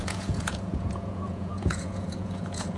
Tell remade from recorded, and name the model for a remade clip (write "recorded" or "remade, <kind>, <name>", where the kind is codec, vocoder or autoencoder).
remade, vocoder, Vocos